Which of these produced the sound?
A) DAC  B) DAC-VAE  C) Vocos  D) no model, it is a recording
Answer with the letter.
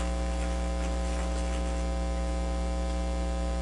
D